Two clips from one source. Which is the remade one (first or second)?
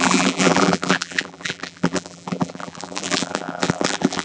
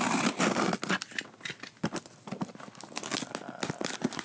first